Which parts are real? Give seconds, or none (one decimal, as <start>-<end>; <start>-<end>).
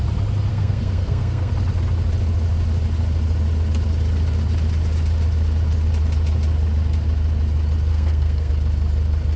0.0-0.5; 1.5-7.9; 8.5-9.4